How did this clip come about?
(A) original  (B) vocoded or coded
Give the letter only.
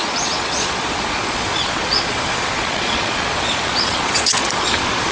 B